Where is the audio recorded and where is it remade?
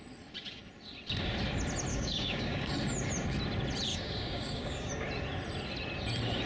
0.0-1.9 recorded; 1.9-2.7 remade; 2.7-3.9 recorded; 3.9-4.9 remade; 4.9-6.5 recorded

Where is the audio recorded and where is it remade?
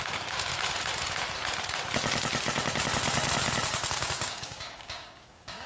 0.0-0.5 remade; 0.5-3.9 recorded; 3.9-5.7 remade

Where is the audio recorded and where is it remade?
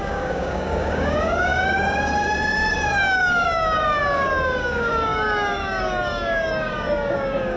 0.0-7.6 remade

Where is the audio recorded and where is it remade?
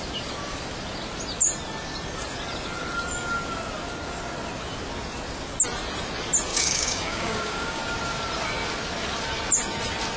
0.0-6.5 recorded; 6.5-7.8 remade; 7.8-10.2 recorded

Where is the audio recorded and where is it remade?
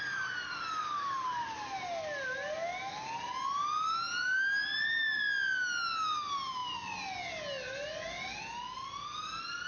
0.0-9.7 recorded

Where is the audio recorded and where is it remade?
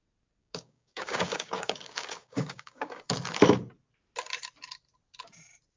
0.0-0.4 recorded; 0.4-3.0 remade; 3.0-5.8 recorded